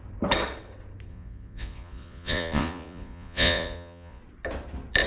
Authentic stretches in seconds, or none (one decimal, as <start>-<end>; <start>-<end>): 0.0-1.1; 4.2-5.1